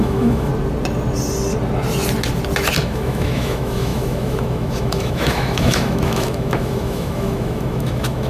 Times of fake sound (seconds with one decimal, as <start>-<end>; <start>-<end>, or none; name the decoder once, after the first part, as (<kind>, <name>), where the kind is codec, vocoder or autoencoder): 0.0-0.5 (autoencoder, DAC-VAE); 2.8-8.3